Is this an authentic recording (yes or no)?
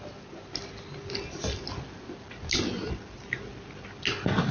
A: yes